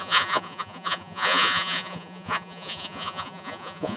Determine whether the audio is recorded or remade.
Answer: remade